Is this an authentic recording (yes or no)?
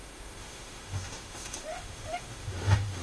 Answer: no